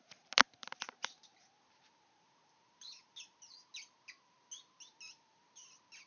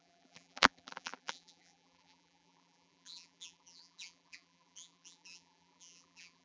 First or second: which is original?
first